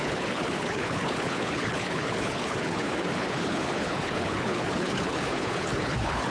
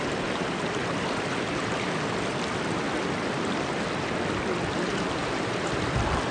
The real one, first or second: second